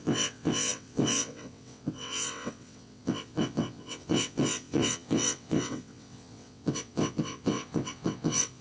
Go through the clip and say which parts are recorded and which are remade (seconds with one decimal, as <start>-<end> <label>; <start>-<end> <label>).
0.0-8.6 remade